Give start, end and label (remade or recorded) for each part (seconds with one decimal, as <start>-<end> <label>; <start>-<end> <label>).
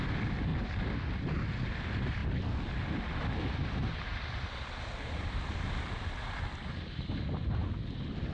0.0-4.1 recorded; 4.1-7.1 remade; 7.1-8.3 recorded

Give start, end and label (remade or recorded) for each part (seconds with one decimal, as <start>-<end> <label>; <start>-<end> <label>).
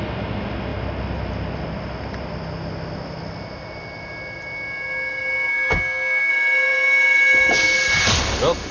0.0-5.5 recorded; 5.5-6.3 remade; 6.3-8.7 recorded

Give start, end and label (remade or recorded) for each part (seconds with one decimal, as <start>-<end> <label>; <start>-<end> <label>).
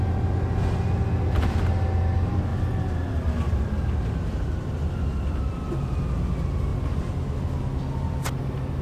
0.0-8.8 recorded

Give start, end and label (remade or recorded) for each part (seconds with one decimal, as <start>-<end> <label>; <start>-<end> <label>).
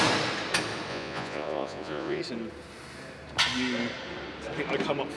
0.0-0.9 recorded; 0.9-2.2 remade; 2.2-5.2 recorded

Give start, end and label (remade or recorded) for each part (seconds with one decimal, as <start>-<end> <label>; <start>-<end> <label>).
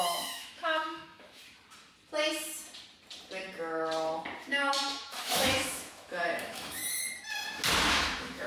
0.0-1.4 remade; 1.4-4.5 recorded; 4.5-6.8 remade; 6.8-7.9 recorded; 7.9-8.5 remade